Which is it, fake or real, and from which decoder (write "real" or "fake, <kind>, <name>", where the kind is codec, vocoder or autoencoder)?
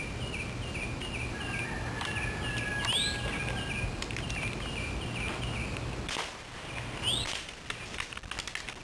real